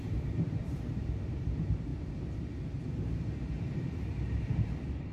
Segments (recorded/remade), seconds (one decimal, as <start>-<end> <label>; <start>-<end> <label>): 0.0-5.1 remade